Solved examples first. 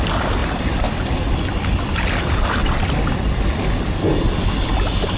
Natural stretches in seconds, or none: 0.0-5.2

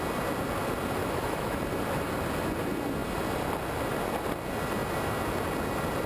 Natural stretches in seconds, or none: 0.0-1.0; 1.6-6.1

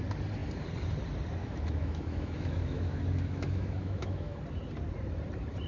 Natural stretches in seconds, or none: 0.0-1.4; 4.4-5.7

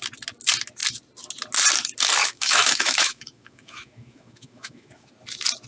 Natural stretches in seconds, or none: 0.0-2.2; 5.1-5.7